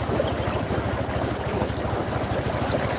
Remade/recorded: recorded